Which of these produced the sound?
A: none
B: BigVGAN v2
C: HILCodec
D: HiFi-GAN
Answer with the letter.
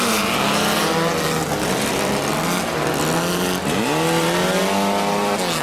A